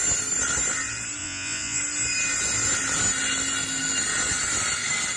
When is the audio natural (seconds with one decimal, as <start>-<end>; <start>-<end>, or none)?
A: 0.0-1.2; 1.8-5.2